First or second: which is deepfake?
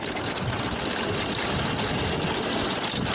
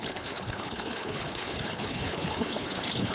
second